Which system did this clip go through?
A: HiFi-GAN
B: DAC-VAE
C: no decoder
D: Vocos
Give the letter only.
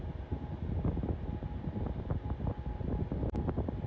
C